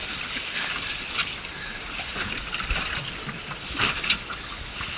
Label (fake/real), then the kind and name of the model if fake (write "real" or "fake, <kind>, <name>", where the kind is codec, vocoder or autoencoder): fake, vocoder, BigVGAN v2